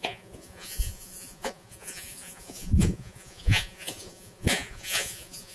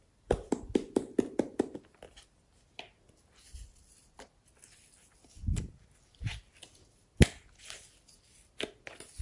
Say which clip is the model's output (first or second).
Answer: first